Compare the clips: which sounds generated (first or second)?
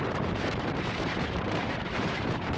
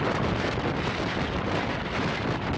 first